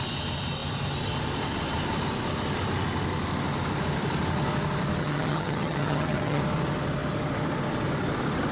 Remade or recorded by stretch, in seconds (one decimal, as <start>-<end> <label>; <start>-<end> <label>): 0.0-5.0 recorded; 5.0-6.4 remade; 6.4-8.5 recorded